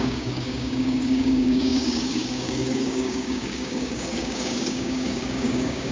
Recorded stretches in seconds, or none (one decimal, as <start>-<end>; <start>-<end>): none